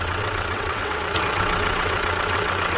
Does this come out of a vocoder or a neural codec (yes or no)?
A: yes